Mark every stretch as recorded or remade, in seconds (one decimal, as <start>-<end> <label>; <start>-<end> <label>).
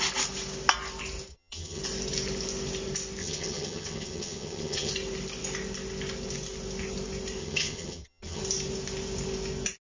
0.0-1.3 recorded; 1.3-1.8 remade; 1.8-3.2 recorded; 3.2-4.9 remade; 4.9-7.4 recorded; 7.4-8.4 remade; 8.4-9.8 recorded